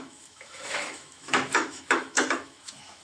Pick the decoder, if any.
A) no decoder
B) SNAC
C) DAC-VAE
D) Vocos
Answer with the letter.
C